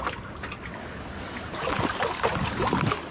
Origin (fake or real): real